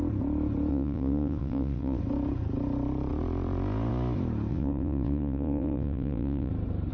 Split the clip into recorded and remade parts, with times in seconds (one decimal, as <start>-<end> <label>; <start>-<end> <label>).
0.0-0.7 recorded; 0.7-2.0 remade; 2.0-4.5 recorded; 4.5-6.5 remade; 6.5-6.9 recorded